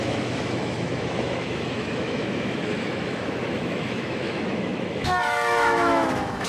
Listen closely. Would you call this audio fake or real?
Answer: fake